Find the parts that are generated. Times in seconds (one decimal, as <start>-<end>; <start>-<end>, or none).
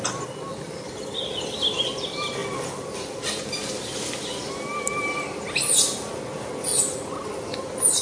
none